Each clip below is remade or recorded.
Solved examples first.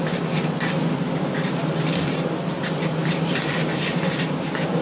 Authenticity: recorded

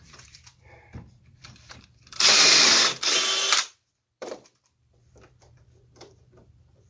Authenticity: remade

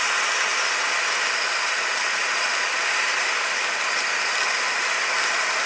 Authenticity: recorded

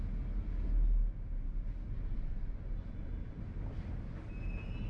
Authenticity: recorded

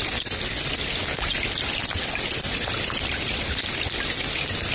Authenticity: recorded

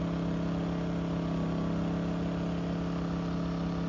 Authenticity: recorded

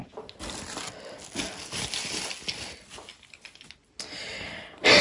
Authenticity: recorded